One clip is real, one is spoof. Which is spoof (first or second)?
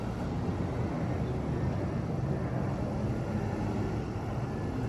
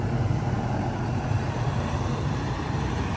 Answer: second